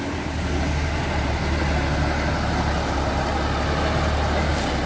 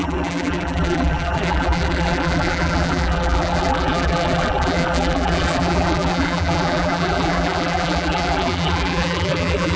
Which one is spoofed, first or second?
second